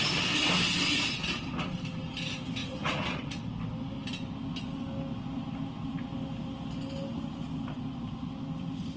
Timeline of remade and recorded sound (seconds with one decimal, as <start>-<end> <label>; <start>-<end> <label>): 0.0-2.6 recorded; 2.6-3.5 remade; 3.5-9.0 recorded